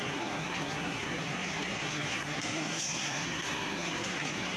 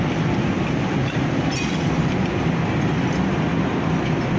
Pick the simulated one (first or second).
first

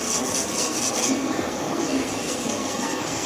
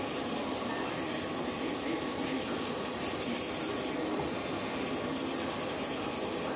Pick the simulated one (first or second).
first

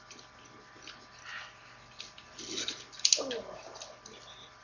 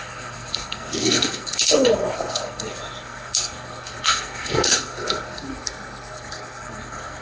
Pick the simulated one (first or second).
second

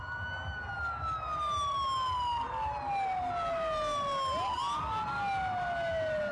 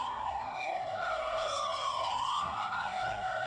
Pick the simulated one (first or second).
second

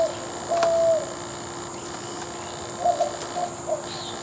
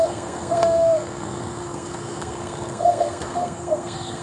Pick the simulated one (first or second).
second